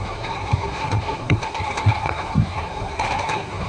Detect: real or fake fake